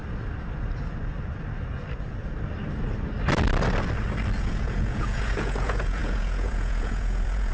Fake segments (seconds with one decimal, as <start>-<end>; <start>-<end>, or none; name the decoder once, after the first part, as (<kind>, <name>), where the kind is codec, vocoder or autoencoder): 4.4-7.5 (vocoder, Vocos)